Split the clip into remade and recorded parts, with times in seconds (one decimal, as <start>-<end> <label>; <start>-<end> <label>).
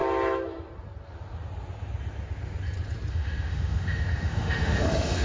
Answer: 0.0-3.1 recorded; 3.1-5.2 remade